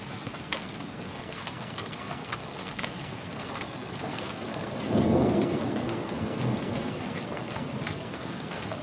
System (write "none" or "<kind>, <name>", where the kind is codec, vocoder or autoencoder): codec, SNAC